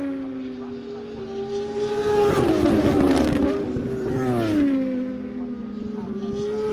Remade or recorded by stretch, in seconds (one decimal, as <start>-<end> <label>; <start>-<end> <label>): 0.0-5.6 recorded; 5.6-6.2 remade; 6.2-6.7 recorded